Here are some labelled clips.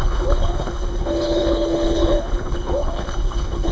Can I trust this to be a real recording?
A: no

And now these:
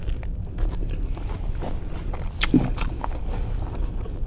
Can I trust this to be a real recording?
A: yes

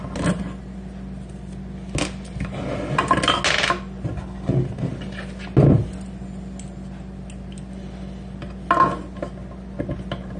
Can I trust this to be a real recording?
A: yes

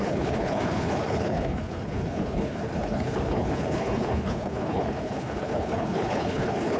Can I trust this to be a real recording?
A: no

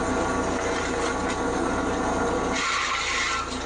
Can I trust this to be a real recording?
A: yes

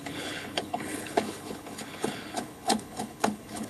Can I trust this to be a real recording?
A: no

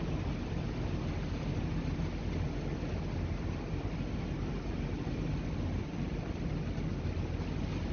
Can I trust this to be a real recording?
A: yes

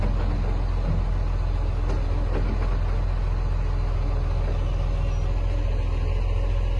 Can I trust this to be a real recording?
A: yes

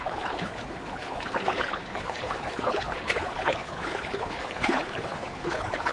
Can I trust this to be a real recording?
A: no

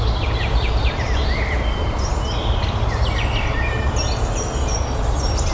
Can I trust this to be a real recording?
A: yes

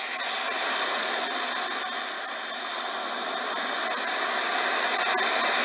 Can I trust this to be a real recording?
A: yes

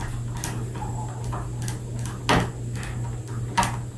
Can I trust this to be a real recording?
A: yes